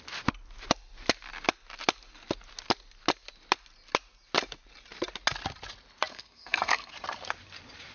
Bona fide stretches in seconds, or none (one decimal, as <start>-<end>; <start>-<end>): 0.0-6.1; 6.9-7.9